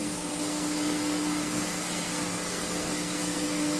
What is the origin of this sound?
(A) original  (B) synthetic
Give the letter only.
B